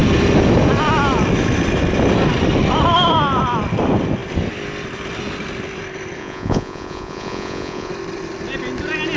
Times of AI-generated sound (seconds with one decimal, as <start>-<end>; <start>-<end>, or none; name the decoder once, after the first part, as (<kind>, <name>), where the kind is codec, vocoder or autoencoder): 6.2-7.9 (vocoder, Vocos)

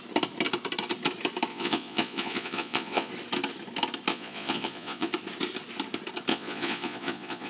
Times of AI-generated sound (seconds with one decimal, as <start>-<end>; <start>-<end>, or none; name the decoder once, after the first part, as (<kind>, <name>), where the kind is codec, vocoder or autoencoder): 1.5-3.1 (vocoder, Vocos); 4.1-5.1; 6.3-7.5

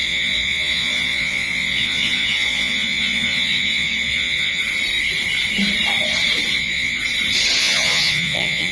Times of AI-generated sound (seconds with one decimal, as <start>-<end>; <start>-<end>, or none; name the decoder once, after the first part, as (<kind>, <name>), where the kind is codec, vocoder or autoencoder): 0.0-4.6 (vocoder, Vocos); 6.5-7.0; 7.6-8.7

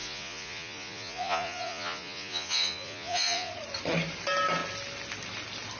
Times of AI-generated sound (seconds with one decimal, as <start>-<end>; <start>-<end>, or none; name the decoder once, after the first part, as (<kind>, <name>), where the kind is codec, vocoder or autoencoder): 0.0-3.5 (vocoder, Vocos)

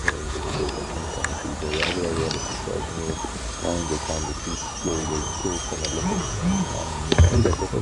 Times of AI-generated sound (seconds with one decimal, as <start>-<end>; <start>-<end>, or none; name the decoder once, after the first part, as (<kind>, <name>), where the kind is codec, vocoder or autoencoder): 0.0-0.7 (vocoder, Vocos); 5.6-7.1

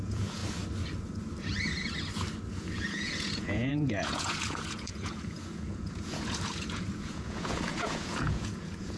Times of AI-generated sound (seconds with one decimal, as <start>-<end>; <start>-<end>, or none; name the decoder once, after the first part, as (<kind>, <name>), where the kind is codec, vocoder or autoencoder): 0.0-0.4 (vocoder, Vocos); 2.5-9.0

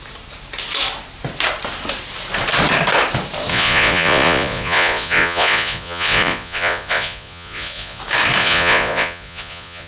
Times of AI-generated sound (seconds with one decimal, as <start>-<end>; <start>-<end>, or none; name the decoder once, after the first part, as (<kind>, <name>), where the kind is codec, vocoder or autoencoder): 3.5-8.0 (vocoder, Vocos); 8.4-9.9